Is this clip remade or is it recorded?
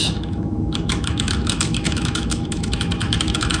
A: remade